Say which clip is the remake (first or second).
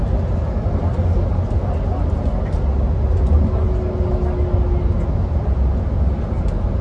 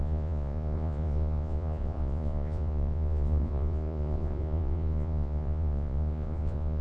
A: second